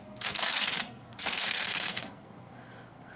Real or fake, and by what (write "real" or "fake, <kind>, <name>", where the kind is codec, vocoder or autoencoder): fake, codec, SNAC